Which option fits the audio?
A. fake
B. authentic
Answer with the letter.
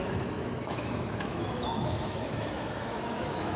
A